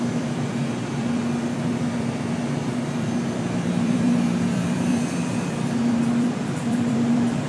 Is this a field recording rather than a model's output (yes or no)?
no